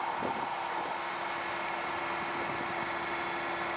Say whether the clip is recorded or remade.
recorded